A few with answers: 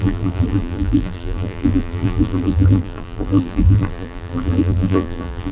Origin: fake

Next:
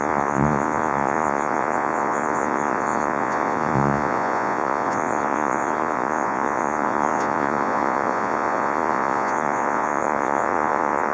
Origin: fake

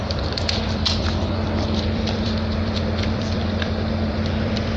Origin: fake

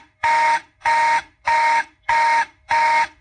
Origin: fake